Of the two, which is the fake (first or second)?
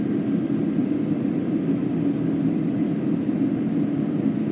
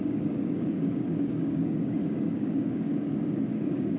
second